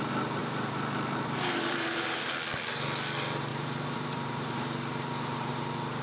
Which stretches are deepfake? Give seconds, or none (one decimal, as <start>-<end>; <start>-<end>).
0.4-2.3; 3.5-5.5